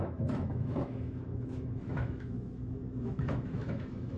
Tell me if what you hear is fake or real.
fake